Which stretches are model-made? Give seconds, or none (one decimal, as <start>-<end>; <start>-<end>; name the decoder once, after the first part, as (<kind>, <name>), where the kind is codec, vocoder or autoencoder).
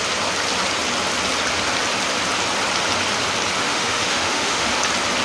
3.6-4.7 (autoencoder, DAC-VAE)